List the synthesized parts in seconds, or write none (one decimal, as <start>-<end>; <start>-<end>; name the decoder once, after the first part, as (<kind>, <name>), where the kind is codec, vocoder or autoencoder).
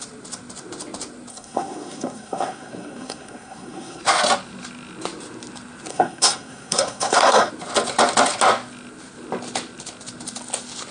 1.3-4.0 (codec, SNAC); 5.9-7.5